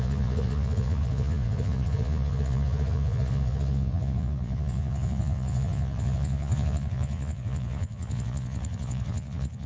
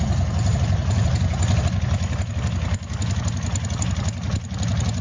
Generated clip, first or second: first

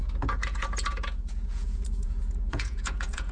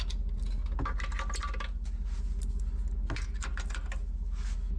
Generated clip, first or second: first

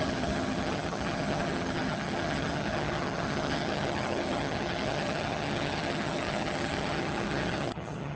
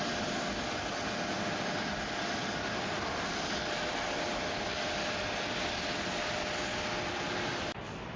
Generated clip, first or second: first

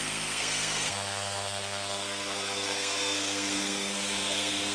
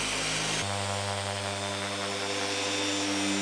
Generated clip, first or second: first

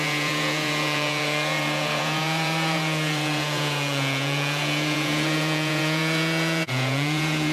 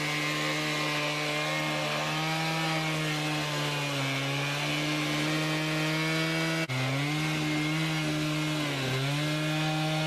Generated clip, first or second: first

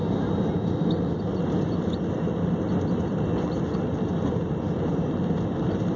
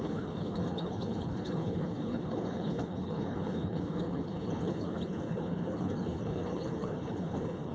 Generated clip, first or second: second